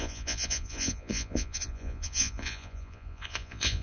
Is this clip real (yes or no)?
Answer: no